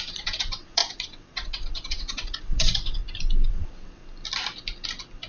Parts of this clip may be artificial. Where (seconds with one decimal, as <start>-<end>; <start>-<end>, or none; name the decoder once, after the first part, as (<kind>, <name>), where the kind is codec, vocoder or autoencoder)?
0.0-3.0 (vocoder, WaveNeXt); 3.5-4.0